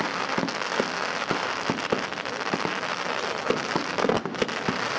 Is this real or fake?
real